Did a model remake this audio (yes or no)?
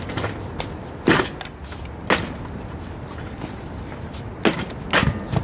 no